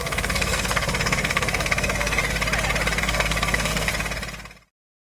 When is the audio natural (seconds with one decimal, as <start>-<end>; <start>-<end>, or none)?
2.2-3.0; 3.9-5.1